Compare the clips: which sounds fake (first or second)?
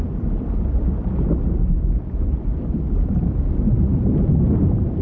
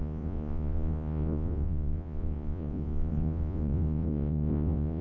second